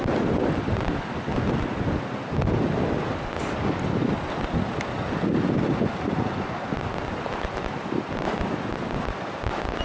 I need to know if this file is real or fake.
real